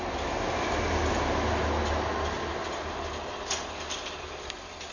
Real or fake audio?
real